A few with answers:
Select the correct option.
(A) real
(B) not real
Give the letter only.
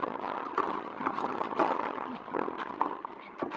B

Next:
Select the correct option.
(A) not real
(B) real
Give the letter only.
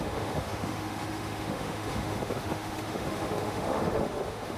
A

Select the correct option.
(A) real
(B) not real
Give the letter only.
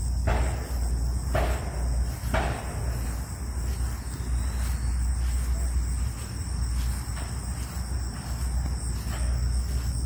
A